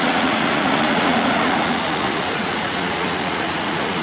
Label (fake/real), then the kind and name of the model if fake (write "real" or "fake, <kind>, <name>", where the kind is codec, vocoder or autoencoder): fake, vocoder, Vocos